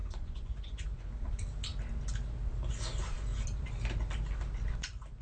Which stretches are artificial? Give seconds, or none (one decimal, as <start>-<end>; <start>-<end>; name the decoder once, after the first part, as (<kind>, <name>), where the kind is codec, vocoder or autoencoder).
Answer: 0.0-1.1 (vocoder, Vocos)